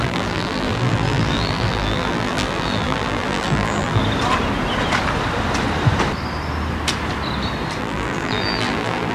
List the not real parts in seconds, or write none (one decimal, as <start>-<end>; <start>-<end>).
0.0-4.0; 7.8-9.1